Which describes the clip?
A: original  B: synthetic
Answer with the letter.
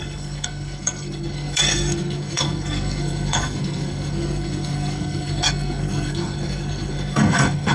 B